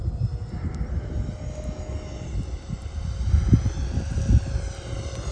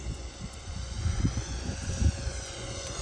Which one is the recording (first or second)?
first